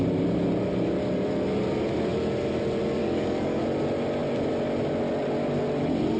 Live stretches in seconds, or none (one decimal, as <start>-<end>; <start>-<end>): 0.0-3.0; 3.6-6.2